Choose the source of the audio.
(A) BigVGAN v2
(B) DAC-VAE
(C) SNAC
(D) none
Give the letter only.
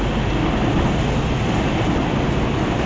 D